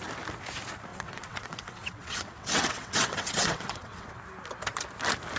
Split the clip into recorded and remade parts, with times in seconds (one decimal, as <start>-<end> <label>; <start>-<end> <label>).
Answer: 0.0-0.9 recorded; 0.9-4.1 remade; 4.1-5.4 recorded